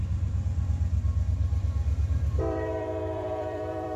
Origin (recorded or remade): remade